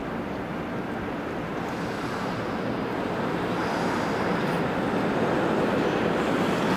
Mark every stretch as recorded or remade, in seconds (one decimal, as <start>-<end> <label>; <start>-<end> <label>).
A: 0.0-6.8 recorded